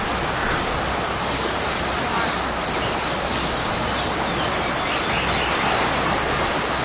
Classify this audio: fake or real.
real